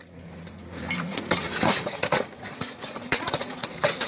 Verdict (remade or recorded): remade